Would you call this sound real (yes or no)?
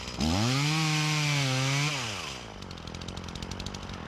yes